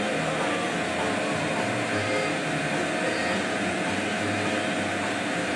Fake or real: real